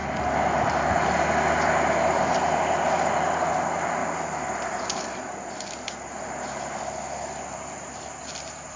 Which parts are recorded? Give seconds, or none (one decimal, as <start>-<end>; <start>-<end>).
0.0-8.8